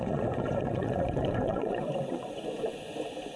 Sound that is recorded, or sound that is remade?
remade